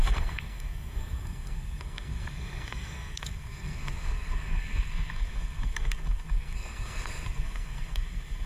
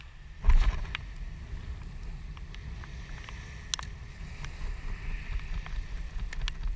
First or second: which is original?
second